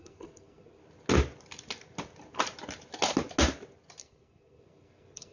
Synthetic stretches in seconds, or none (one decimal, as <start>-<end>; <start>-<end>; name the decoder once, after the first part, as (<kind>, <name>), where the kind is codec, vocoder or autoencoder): 0.0-0.8 (codec, SNAC); 4.0-5.3